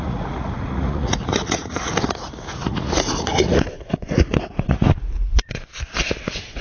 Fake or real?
fake